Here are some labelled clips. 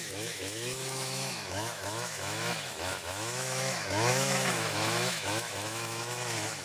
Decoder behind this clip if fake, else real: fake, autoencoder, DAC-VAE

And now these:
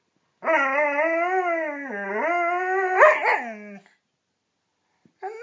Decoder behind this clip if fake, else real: real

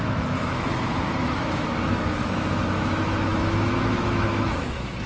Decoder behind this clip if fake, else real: fake, autoencoder, DAC-VAE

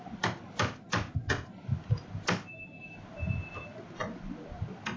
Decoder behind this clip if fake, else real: real